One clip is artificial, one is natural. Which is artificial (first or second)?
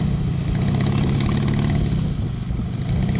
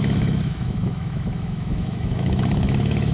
second